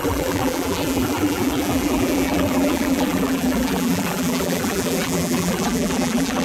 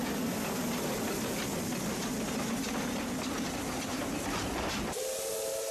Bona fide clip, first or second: second